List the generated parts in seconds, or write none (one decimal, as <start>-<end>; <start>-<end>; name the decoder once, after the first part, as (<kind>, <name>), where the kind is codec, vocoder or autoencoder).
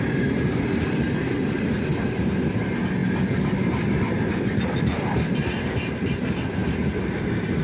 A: none